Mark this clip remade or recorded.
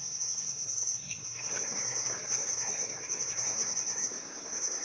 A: remade